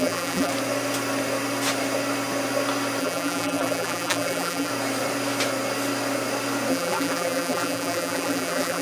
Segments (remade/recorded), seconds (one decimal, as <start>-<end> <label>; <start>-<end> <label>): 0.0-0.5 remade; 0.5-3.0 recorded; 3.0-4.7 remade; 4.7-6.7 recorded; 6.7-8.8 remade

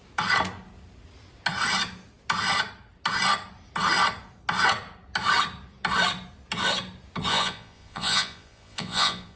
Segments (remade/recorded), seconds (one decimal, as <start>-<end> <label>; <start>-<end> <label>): 0.0-7.3 recorded; 7.3-9.4 remade

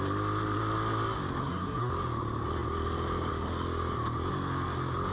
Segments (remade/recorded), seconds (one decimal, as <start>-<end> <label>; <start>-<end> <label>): 0.0-1.4 recorded; 1.4-1.9 remade; 1.9-5.1 recorded